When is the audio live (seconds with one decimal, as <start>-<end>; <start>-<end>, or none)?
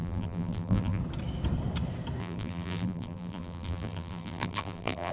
1.0-2.2